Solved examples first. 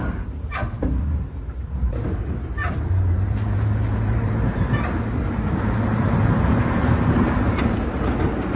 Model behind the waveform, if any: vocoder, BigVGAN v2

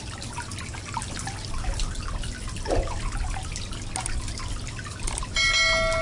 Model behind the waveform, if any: none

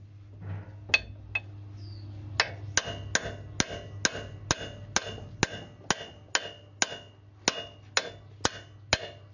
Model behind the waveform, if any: none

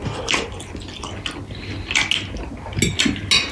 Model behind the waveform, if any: none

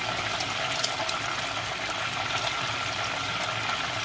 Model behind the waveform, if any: none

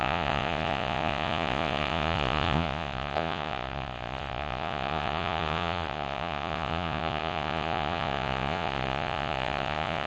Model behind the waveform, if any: vocoder, Vocos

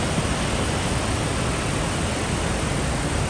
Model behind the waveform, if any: none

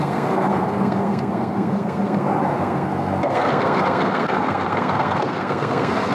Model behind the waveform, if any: codec, SNAC